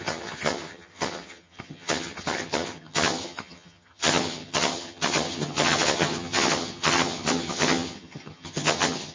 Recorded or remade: remade